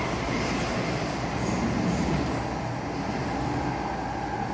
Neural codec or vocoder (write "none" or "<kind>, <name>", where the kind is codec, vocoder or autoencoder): none